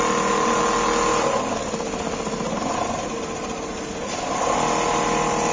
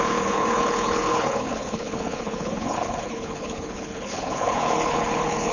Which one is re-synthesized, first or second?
second